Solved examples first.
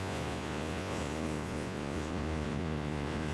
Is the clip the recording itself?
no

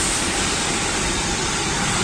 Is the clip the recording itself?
yes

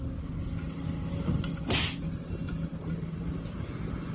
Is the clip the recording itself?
yes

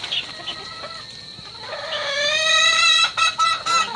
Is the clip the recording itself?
yes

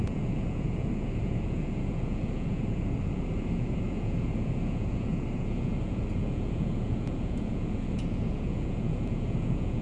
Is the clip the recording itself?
no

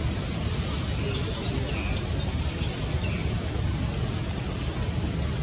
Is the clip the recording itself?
yes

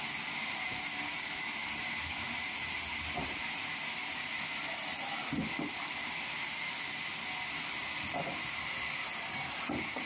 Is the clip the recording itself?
yes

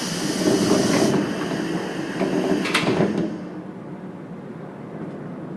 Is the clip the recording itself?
yes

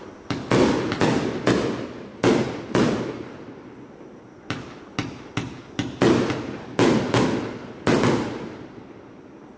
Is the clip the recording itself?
yes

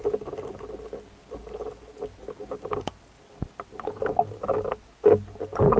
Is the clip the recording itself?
yes